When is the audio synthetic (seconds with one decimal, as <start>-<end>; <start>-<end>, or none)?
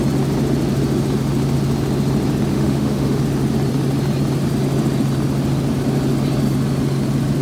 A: 2.5-3.2